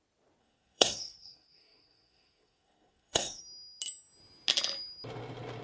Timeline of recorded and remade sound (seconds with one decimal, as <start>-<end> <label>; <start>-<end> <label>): 0.0-0.4 recorded; 0.4-3.4 remade; 3.4-5.6 recorded